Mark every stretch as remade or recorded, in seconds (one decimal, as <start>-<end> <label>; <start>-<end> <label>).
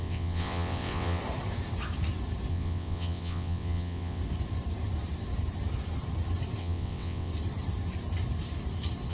0.0-1.2 remade; 1.2-2.5 recorded; 2.5-4.2 remade; 4.2-6.6 recorded; 6.6-7.3 remade; 7.3-9.1 recorded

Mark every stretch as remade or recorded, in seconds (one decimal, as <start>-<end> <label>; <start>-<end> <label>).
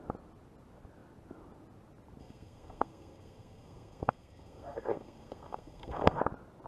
0.0-2.2 recorded; 2.2-6.2 remade; 6.2-6.7 recorded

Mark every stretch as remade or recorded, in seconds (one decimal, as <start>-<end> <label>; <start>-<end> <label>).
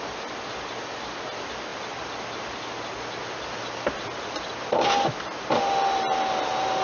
0.0-6.8 recorded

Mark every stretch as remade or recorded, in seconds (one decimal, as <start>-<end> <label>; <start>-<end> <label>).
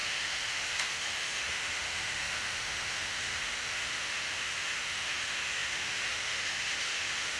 0.0-7.4 remade